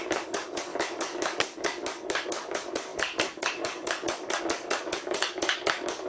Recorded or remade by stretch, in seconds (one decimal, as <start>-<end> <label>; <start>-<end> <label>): 0.0-6.1 remade